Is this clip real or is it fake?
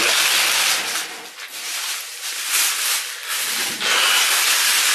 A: real